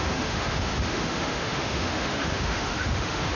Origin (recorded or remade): remade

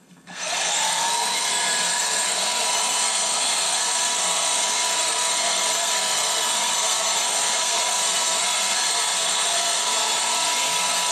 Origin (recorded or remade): remade